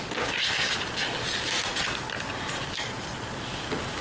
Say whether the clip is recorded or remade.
recorded